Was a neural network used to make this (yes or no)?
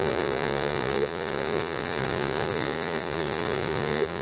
yes